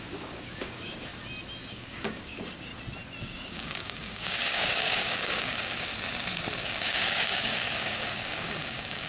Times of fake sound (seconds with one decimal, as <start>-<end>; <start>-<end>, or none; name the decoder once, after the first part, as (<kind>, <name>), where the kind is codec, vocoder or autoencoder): 0.0-1.1 (codec, DAC); 1.7-2.7; 3.2-5.9; 6.6-9.1